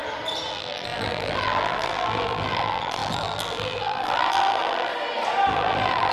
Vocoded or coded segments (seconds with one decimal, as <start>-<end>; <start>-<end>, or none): 0.5-4.9; 5.5-6.1